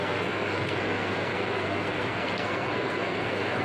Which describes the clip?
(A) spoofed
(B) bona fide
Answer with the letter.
A